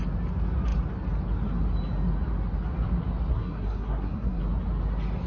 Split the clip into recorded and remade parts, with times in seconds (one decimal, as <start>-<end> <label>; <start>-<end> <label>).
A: 0.0-3.3 recorded; 3.3-4.4 remade; 4.4-5.3 recorded